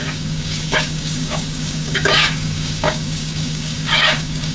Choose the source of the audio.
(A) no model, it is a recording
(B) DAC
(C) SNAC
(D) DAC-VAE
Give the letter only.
B